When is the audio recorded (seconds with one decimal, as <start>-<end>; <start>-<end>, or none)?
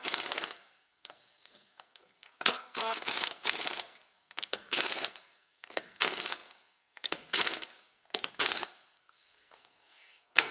none